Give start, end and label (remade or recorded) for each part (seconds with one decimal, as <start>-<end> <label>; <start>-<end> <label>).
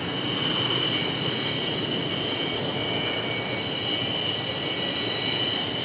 0.0-5.8 recorded